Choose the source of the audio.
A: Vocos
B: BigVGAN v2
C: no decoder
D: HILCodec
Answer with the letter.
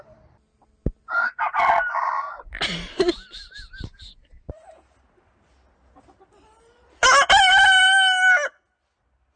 C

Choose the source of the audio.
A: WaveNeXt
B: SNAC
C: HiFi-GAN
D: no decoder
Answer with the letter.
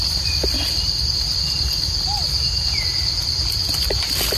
D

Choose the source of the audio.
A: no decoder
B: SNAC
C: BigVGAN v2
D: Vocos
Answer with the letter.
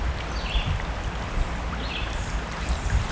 A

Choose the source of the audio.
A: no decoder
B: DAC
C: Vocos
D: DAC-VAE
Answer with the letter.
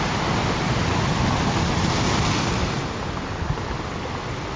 A